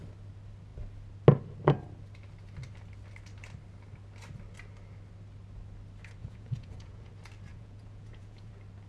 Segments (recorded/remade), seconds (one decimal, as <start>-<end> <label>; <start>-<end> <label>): 0.0-6.2 recorded; 6.2-7.1 remade; 7.1-7.5 recorded; 7.5-8.5 remade; 8.5-8.9 recorded